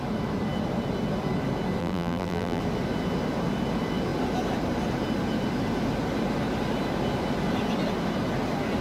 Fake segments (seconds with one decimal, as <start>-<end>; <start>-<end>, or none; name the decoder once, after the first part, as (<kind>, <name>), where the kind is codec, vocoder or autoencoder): 1.8-2.6 (vocoder, BigVGAN v2)